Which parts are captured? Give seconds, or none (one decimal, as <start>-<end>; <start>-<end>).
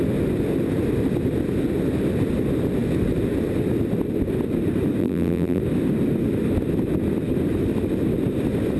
0.0-5.0; 5.6-8.8